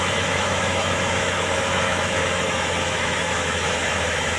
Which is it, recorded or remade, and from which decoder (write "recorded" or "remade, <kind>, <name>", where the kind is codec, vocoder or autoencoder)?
remade, autoencoder, DAC-VAE